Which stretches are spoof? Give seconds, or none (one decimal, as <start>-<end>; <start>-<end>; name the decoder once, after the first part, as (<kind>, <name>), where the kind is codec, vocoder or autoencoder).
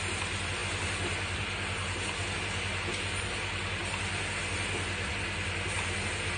none